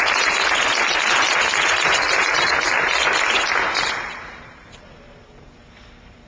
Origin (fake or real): real